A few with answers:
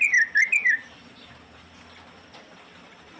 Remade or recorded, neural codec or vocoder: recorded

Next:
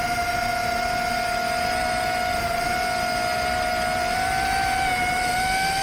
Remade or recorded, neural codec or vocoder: recorded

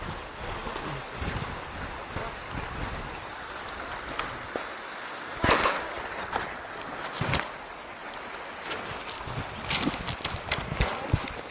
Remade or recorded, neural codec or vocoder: recorded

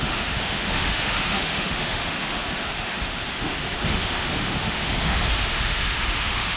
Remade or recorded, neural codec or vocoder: remade, autoencoder, DAC-VAE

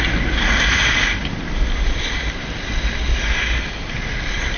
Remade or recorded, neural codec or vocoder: recorded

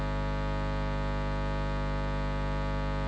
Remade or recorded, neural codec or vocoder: recorded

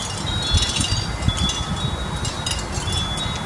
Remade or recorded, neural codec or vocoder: recorded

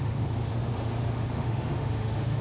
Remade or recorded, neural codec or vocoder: remade, autoencoder, DAC-VAE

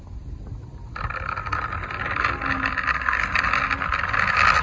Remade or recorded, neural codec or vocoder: recorded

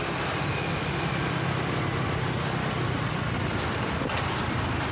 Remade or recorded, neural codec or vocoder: recorded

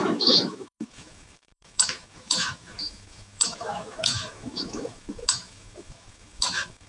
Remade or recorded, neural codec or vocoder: remade, autoencoder, DAC-VAE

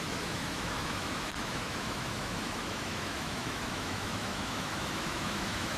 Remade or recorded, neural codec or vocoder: remade, autoencoder, DAC-VAE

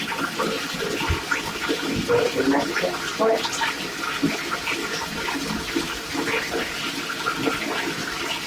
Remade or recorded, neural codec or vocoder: recorded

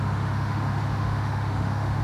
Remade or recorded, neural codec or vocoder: remade, autoencoder, DAC-VAE